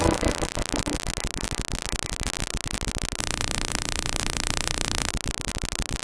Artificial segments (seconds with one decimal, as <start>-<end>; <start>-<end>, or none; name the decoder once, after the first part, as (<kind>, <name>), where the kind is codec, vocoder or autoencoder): 3.2-5.1 (autoencoder, DAC-VAE)